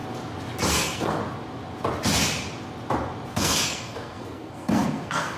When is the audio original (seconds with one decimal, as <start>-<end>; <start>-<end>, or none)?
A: 0.0-0.7; 1.2-3.3

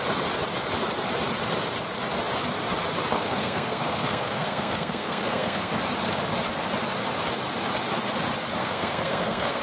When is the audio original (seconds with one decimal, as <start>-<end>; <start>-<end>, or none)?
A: 0.0-3.1; 5.7-8.6